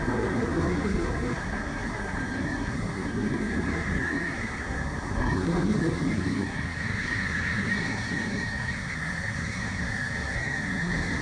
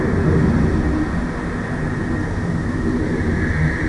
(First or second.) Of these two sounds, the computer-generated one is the first